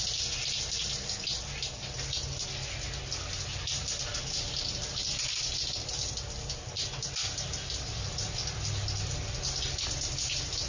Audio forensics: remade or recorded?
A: recorded